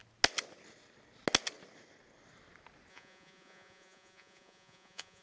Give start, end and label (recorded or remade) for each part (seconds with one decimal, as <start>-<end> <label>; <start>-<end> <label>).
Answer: 0.0-2.9 recorded; 2.9-5.2 remade

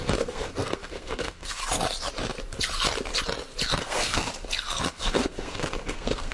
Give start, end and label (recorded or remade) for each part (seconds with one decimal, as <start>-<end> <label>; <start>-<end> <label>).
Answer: 0.0-1.6 remade; 1.6-3.8 recorded; 3.8-4.3 remade; 4.3-4.9 recorded; 4.9-6.3 remade

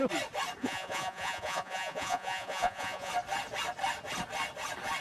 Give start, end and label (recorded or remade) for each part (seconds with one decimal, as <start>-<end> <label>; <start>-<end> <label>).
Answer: 0.0-0.6 recorded; 0.6-3.1 remade; 3.1-5.0 recorded

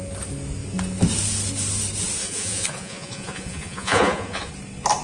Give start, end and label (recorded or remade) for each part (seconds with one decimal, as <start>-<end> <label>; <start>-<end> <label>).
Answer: 0.0-2.2 recorded; 2.2-4.5 remade; 4.5-5.0 recorded

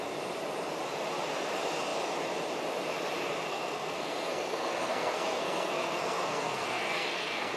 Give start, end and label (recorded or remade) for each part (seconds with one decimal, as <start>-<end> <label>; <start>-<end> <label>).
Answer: 0.0-3.5 recorded; 3.5-7.6 remade

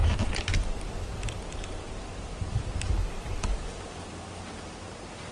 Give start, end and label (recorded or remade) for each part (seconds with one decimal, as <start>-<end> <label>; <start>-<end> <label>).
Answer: 0.0-1.8 recorded; 1.8-2.6 remade; 2.6-3.6 recorded; 3.6-5.3 remade

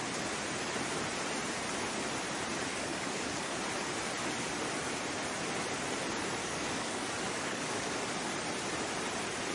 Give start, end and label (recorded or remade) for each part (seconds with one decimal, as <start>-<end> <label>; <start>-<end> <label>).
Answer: 0.0-2.7 recorded; 2.7-3.6 remade; 3.6-6.4 recorded; 6.4-8.0 remade; 8.0-9.5 recorded